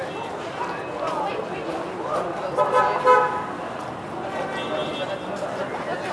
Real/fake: real